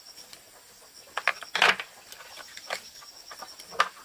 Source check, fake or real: real